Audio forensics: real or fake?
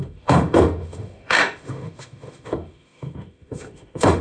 fake